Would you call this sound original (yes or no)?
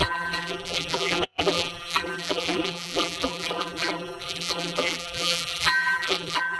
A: no